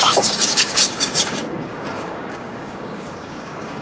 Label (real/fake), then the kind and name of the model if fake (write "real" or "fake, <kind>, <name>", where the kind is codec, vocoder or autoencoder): fake, codec, DAC